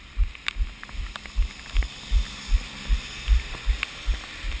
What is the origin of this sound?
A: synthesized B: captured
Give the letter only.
B